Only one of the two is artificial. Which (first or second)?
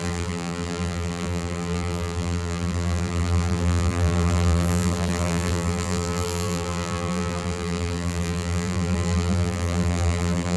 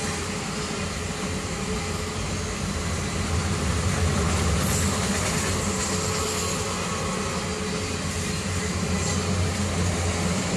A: first